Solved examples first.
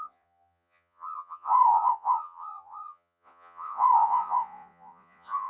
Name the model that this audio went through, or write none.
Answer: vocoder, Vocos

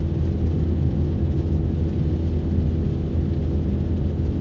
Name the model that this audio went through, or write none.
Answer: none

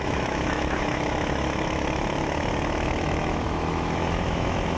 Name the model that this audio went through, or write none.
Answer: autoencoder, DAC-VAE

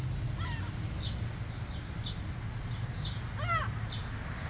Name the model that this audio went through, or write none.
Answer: none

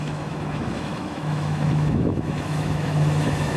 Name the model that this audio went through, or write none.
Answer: autoencoder, DAC-VAE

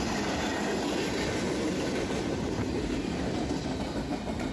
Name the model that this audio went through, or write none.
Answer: none